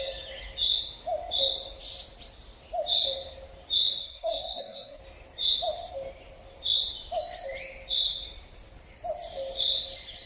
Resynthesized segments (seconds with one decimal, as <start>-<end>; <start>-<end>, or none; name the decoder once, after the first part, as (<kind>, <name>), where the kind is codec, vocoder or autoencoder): 4.0-5.0 (codec, SNAC)